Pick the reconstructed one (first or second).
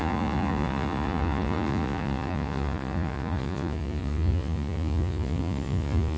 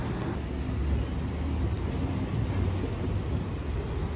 first